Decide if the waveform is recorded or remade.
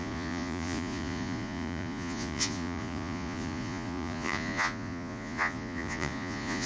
remade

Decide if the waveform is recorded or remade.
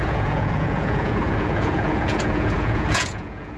remade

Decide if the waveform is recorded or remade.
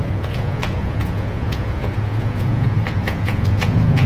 remade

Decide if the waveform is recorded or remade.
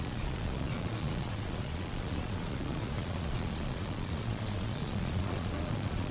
remade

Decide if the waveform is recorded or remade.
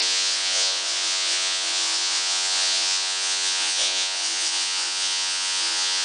remade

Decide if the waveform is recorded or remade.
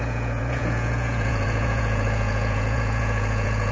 remade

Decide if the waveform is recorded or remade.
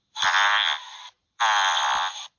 recorded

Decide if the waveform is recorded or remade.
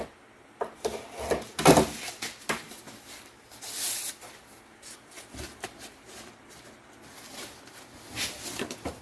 recorded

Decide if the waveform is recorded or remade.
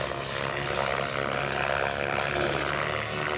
recorded